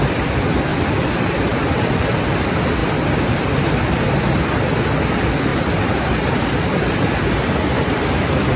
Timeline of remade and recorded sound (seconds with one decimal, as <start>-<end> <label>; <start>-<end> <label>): 0.0-0.7 recorded; 0.7-2.4 remade; 2.4-2.8 recorded; 2.8-3.8 remade; 3.8-5.5 recorded; 5.5-6.3 remade; 6.3-8.6 recorded